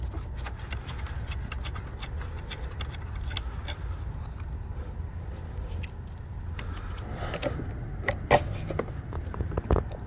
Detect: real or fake real